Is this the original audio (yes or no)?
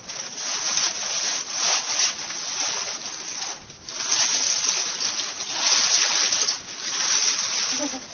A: yes